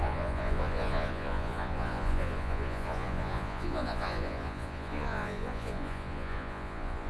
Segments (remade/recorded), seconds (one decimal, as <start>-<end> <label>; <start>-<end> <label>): 0.0-7.1 remade